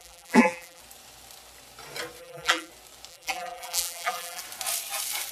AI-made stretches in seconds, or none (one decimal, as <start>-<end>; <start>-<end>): 0.0-0.8; 2.2-2.7; 3.1-4.4